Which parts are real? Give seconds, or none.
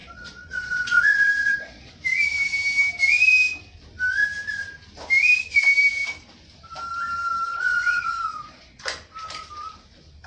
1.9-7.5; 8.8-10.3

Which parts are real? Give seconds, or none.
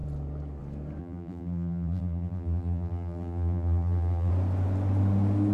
0.0-1.0; 4.3-5.5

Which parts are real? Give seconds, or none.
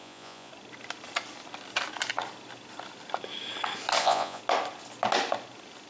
0.5-4.0; 4.4-5.9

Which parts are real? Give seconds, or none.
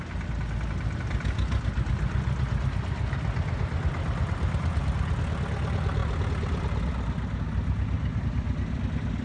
0.0-9.2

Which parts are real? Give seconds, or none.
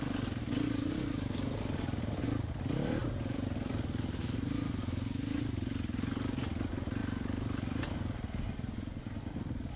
0.0-9.8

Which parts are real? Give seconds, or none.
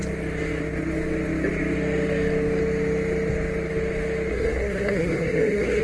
0.0-4.3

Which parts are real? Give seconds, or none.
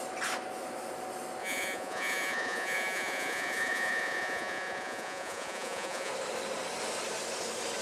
0.0-1.4; 6.1-7.8